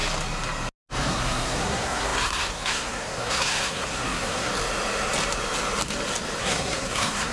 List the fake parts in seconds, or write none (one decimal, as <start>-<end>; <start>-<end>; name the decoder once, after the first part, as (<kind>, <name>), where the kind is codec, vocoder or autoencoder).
1.1-4.5 (codec, SNAC); 6.4-7.3

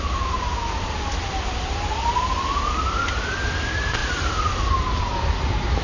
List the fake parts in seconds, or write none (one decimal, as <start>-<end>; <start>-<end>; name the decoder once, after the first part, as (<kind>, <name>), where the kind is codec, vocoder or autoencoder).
none

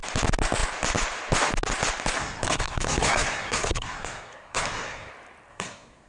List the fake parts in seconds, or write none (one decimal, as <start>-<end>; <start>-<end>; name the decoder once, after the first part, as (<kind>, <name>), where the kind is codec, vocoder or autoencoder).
2.2-5.1 (codec, SNAC); 5.5-6.1

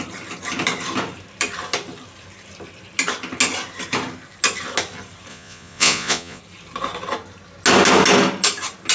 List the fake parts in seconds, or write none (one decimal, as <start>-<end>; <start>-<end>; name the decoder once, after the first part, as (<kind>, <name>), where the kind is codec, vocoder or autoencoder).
5.3-6.4 (vocoder, Vocos)